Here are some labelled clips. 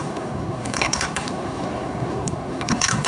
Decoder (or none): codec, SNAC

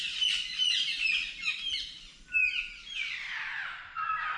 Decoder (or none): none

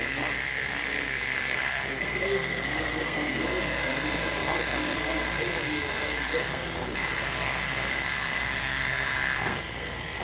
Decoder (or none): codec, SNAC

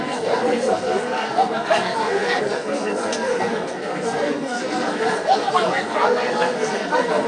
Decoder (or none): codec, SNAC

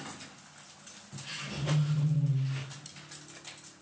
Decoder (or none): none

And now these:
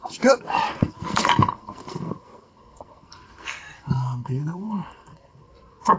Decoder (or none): codec, SNAC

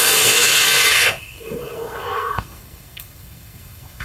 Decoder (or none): codec, SNAC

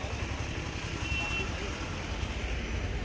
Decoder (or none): none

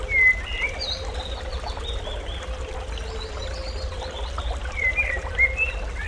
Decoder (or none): none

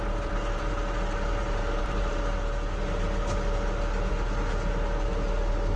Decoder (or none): none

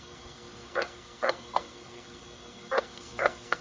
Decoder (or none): codec, SNAC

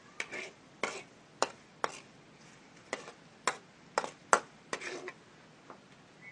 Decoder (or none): none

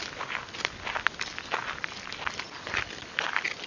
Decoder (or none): none